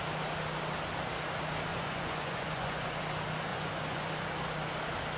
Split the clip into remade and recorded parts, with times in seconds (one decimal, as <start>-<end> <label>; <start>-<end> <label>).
0.0-1.7 recorded; 1.7-3.0 remade; 3.0-3.5 recorded; 3.5-4.1 remade; 4.1-5.2 recorded